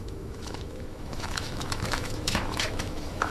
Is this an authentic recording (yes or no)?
no